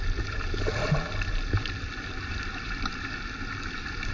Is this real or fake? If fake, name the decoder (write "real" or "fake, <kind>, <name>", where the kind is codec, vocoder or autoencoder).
real